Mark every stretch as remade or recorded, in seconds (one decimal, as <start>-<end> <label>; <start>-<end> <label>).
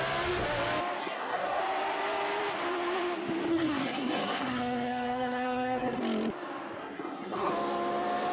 0.0-1.0 recorded; 1.0-1.6 remade; 1.6-3.5 recorded; 3.5-6.0 remade; 6.0-6.8 recorded; 6.8-7.5 remade; 7.5-8.3 recorded